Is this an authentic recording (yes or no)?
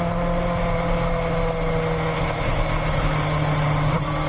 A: yes